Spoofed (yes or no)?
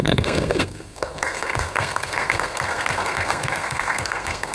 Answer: yes